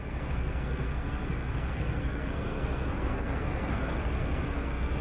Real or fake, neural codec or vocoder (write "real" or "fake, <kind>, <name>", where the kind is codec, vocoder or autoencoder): fake, codec, SNAC